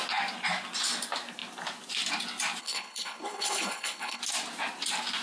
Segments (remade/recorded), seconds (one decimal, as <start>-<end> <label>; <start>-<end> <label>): 0.0-2.6 recorded; 2.6-4.2 remade; 4.2-5.2 recorded